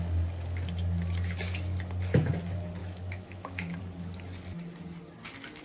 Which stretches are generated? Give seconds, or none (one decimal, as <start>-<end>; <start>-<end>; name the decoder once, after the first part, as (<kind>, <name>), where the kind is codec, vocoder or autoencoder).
2.8-3.8 (autoencoder, DAC-VAE)